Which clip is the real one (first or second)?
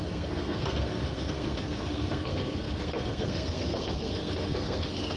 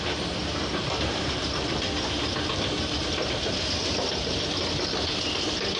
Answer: second